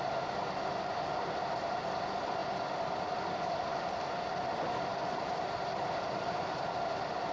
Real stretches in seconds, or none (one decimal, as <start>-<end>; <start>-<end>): 0.0-4.9